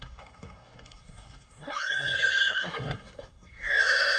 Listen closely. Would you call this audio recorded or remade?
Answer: remade